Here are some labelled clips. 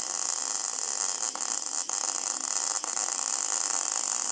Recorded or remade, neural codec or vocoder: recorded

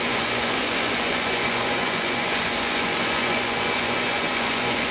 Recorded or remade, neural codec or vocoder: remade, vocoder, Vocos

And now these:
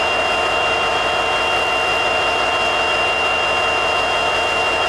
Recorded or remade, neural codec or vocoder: recorded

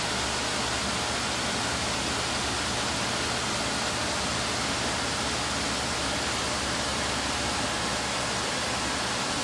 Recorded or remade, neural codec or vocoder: recorded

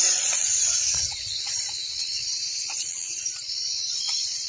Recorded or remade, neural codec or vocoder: remade, vocoder, Vocos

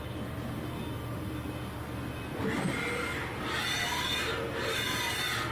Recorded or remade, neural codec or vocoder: recorded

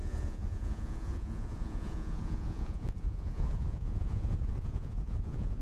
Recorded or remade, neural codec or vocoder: remade, vocoder, Vocos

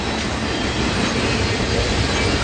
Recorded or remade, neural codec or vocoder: recorded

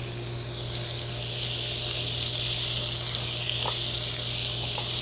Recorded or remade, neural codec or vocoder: recorded